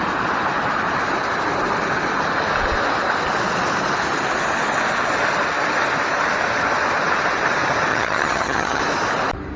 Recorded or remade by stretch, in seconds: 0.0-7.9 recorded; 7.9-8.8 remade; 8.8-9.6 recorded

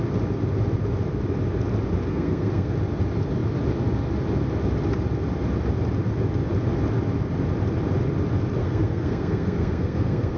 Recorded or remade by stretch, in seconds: 0.0-2.1 recorded; 2.1-2.7 remade; 2.7-8.6 recorded; 8.6-10.4 remade

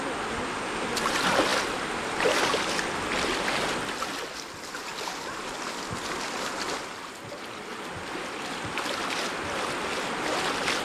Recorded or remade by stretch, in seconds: 0.0-10.8 recorded

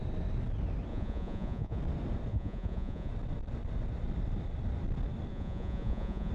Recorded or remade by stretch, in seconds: 0.0-0.9 recorded; 0.9-1.8 remade; 1.8-2.3 recorded; 2.3-3.1 remade; 3.1-5.3 recorded; 5.3-6.3 remade

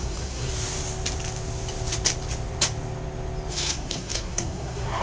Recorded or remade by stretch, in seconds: 0.0-0.5 remade; 0.5-3.5 recorded; 3.5-5.0 remade

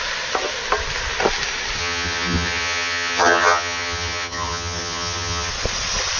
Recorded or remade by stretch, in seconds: 0.0-1.8 recorded; 1.8-5.5 remade; 5.5-6.2 recorded

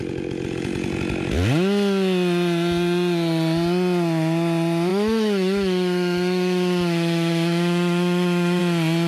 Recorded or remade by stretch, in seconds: 0.0-4.9 recorded; 4.9-8.6 remade; 8.6-9.1 recorded

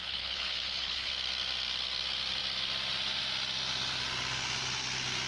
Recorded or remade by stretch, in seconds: 0.0-1.1 remade; 1.1-5.3 recorded